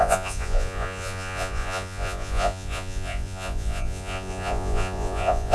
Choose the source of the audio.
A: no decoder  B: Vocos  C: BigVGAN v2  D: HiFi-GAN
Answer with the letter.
B